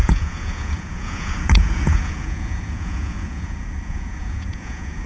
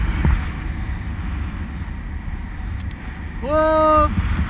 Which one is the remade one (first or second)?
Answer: first